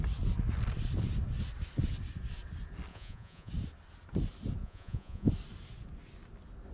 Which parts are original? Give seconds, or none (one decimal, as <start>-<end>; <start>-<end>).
0.0-2.9; 3.5-4.6; 5.3-6.7